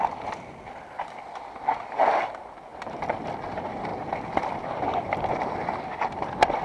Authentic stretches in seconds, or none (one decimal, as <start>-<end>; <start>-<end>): 0.0-2.7; 3.3-3.9; 4.5-6.6